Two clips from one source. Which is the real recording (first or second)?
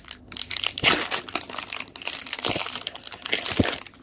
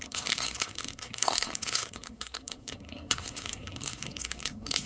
first